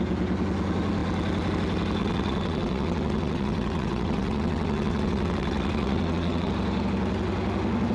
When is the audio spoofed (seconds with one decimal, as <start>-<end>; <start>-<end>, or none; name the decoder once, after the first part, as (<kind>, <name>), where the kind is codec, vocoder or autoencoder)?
2.0-6.5 (vocoder, WaveNeXt)